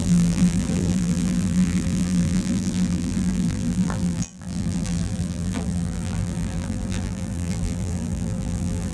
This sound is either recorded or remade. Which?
remade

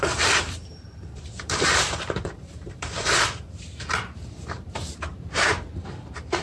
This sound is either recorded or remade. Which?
remade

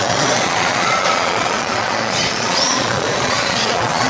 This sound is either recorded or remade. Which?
remade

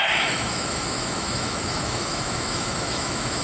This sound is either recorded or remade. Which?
remade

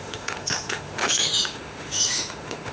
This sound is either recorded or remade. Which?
remade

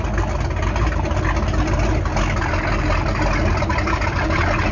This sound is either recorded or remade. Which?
recorded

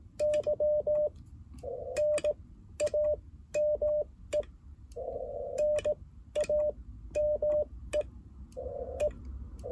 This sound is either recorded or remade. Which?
recorded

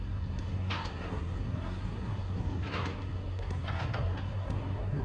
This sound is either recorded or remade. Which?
remade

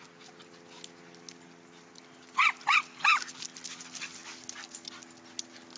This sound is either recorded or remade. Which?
recorded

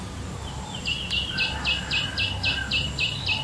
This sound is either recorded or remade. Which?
recorded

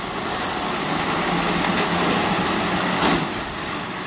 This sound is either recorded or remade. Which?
recorded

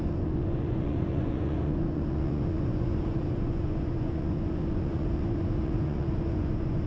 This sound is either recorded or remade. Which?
remade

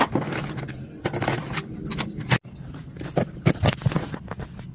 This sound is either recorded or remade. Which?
recorded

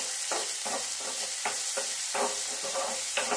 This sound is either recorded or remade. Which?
recorded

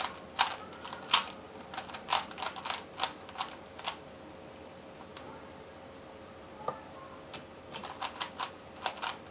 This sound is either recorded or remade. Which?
recorded